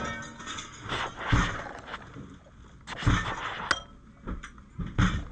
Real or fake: real